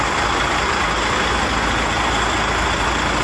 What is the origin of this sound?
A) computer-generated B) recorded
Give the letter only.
B